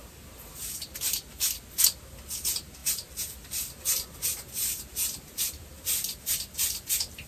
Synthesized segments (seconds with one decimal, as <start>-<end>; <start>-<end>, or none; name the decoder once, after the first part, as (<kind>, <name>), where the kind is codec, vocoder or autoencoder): 2.8-7.3 (vocoder, BigVGAN v2)